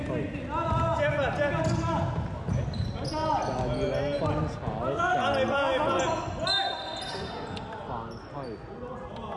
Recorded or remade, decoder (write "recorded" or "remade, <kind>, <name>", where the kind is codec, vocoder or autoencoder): recorded